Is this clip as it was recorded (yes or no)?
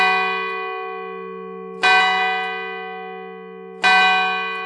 yes